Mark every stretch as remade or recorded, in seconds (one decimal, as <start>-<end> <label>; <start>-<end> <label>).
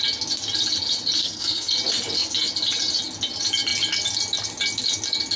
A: 0.0-1.2 recorded; 1.2-1.7 remade; 1.7-5.4 recorded